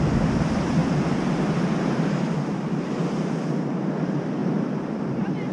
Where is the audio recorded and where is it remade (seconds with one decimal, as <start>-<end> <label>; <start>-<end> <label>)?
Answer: 0.0-0.8 remade; 0.8-2.7 recorded; 2.7-5.5 remade